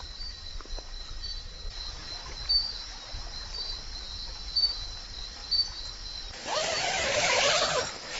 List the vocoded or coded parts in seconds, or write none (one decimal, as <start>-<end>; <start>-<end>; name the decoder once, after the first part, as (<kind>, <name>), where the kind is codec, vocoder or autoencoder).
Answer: 0.0-5.4 (vocoder, BigVGAN v2); 6.6-8.2